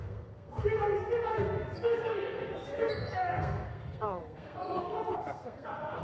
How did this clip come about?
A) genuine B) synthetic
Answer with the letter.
B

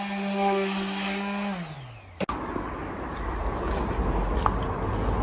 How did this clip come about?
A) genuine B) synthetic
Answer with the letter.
A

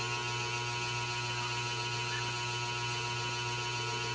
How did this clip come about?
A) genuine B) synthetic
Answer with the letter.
A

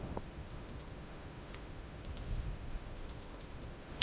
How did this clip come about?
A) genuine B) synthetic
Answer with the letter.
B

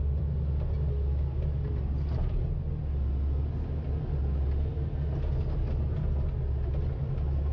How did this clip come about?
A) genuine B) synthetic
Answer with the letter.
A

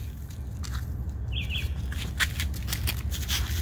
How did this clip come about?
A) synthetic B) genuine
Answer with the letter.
B